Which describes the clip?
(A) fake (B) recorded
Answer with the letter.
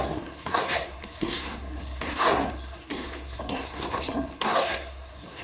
A